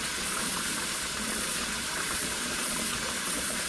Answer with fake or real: fake